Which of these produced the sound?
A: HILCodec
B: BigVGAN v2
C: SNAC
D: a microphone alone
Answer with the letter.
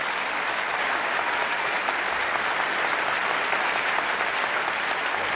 D